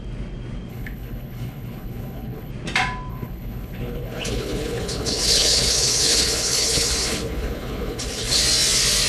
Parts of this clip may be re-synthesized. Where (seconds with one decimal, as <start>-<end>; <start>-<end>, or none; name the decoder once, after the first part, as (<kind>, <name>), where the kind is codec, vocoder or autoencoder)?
0.7-2.5 (codec, HILCodec); 3.1-8.4